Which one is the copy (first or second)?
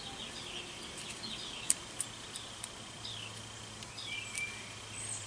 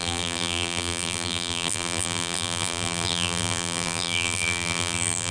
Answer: second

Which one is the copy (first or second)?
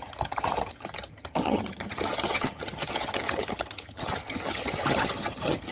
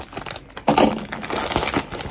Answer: first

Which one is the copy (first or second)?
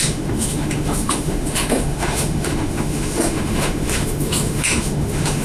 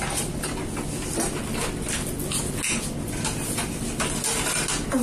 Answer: first